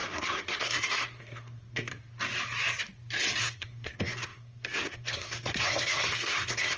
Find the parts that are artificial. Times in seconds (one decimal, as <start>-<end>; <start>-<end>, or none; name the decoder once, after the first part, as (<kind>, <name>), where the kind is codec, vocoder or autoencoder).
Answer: 0.0-1.9 (codec, SNAC); 3.4-6.8